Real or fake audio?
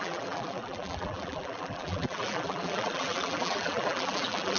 fake